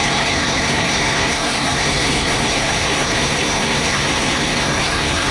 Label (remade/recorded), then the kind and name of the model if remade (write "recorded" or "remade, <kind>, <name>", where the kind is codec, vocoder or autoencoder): remade, codec, SNAC